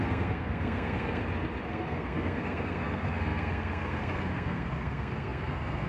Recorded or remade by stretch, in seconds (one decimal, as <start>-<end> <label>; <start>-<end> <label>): 0.0-1.2 remade; 1.2-1.7 recorded; 1.7-5.9 remade